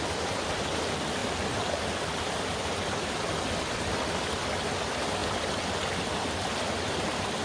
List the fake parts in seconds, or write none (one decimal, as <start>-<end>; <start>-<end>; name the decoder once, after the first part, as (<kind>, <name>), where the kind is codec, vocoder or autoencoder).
none